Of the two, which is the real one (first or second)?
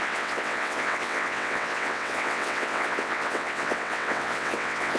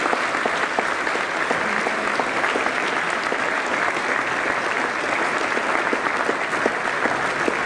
second